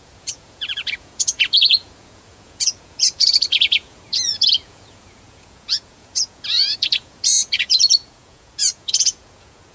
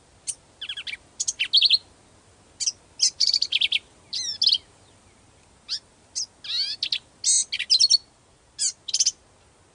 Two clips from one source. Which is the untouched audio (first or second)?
second